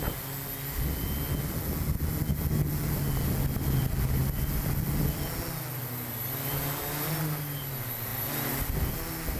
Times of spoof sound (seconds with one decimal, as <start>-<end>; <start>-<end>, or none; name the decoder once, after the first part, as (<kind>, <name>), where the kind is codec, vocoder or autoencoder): none